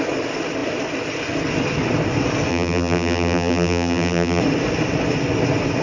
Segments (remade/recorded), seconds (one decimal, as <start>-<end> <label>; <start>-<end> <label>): 0.0-2.5 recorded; 2.5-4.4 remade; 4.4-5.8 recorded